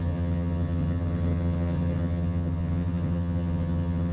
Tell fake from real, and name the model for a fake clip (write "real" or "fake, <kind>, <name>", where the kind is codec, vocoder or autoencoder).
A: fake, vocoder, HiFi-GAN